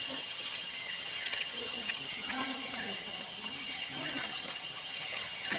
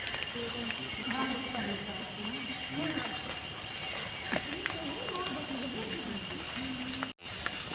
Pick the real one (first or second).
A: second